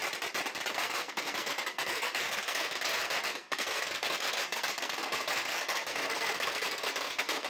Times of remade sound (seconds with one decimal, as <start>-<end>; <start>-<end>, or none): 0.7-7.5